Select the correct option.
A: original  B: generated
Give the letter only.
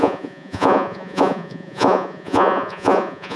B